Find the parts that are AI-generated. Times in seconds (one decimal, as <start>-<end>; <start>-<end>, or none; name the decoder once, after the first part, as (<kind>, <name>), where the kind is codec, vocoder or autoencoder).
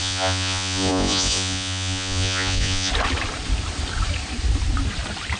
0.0-2.9 (vocoder, Vocos)